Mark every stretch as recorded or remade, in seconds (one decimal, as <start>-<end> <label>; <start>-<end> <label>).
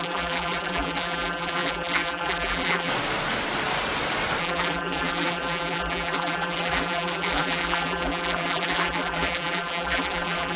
0.0-2.9 remade; 2.9-4.4 recorded; 4.4-10.6 remade